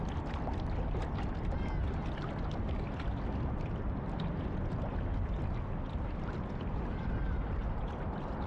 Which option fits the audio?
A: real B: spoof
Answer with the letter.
A